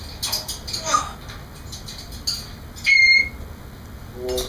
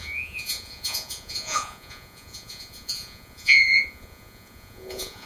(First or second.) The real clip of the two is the first